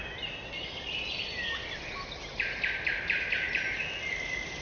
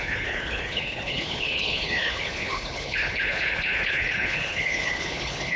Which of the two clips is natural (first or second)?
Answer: first